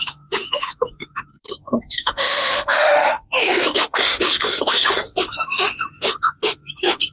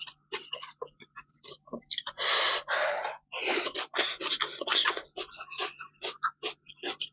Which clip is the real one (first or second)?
second